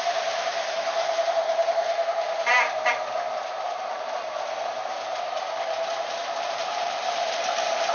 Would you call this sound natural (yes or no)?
no